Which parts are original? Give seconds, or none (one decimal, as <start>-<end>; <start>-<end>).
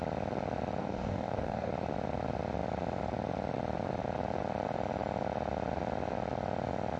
0.0-0.8; 1.7-7.0